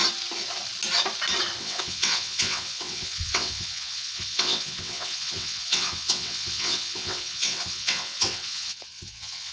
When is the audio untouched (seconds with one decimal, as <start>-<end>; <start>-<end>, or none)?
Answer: 0.0-1.6